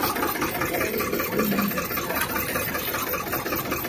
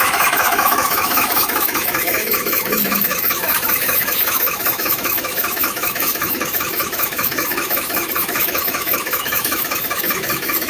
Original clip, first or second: first